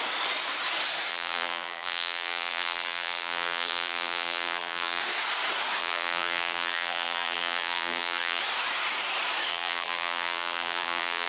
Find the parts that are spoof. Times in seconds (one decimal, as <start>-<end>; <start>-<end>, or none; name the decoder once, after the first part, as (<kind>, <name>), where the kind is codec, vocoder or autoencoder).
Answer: 1.1-5.0 (vocoder, BigVGAN v2); 5.8-8.4; 9.5-11.3